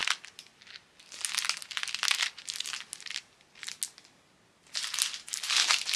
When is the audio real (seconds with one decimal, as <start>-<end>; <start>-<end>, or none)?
0.0-6.0